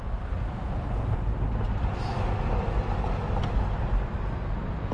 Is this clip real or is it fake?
real